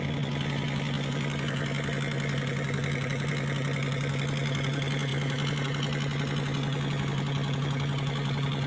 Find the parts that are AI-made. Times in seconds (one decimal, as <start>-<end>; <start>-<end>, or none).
none